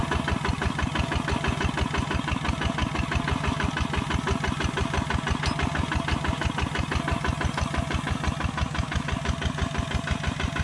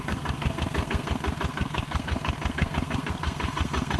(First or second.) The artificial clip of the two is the second